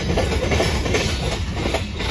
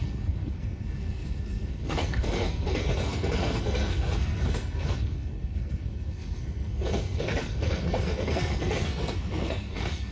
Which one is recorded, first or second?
first